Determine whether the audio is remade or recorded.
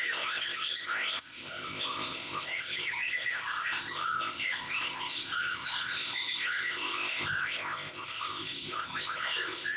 remade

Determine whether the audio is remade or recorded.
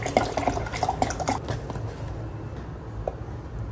recorded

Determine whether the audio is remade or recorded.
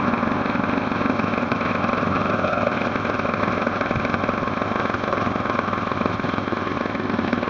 remade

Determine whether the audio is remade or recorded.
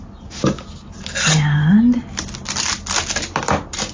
recorded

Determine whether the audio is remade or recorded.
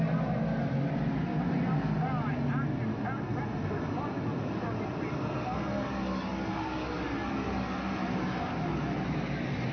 recorded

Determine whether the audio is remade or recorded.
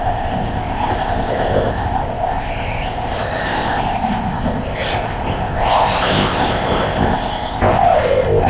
remade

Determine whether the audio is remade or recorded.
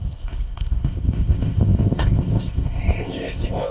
remade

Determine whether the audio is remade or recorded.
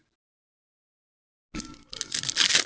recorded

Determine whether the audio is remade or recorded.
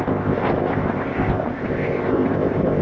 remade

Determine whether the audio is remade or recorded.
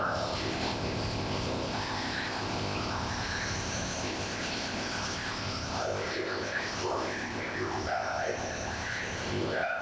remade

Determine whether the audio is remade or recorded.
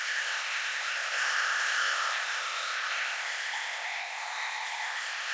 remade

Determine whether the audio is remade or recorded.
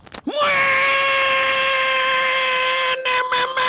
recorded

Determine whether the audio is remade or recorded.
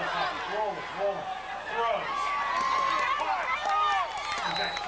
recorded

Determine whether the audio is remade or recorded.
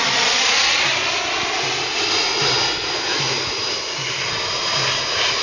recorded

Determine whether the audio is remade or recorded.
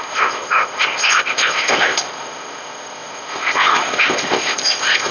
remade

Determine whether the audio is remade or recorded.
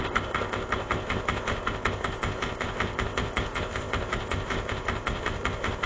remade